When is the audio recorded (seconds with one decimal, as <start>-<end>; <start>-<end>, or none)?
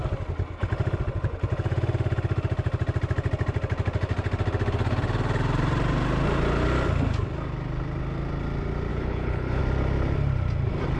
0.0-8.9; 9.6-11.0